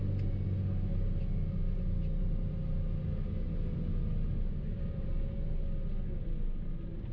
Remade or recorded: recorded